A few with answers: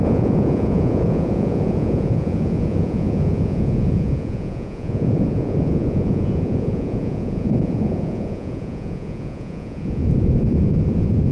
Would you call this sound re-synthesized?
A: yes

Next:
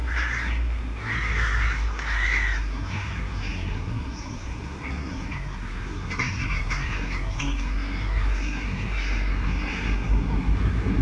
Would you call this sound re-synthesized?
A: yes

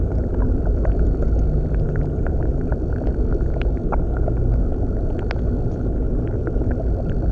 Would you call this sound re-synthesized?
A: no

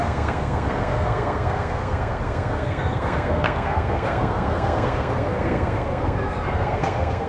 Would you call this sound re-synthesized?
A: yes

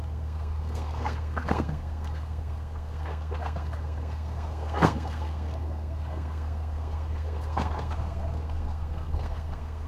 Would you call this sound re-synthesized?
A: yes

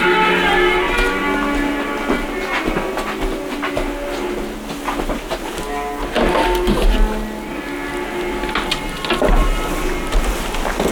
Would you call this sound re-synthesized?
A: no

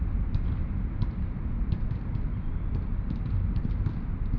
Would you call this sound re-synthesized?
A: no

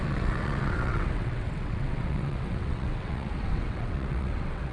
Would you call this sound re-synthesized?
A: yes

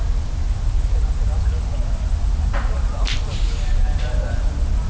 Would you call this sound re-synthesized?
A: no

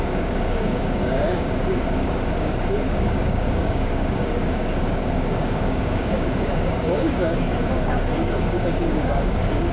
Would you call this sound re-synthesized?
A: yes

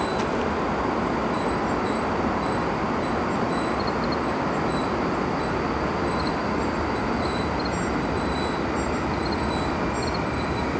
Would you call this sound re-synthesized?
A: no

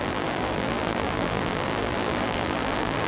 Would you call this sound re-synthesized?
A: yes